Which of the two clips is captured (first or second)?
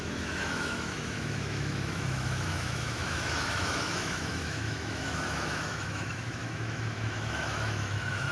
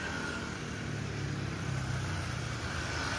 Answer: second